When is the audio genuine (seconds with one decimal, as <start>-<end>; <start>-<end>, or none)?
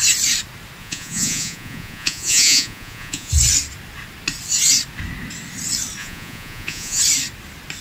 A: 0.0-0.8; 3.3-6.0; 7.0-7.8